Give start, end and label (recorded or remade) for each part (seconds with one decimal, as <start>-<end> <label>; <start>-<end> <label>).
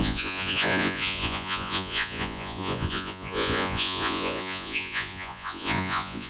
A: 0.0-6.3 remade